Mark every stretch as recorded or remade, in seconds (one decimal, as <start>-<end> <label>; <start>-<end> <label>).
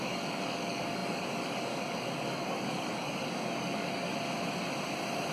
0.0-4.1 remade; 4.1-5.3 recorded